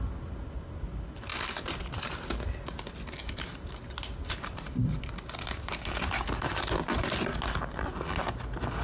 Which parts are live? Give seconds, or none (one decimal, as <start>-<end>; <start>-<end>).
0.0-8.8